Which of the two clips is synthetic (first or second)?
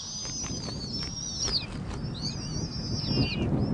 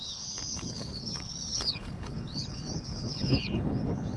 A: second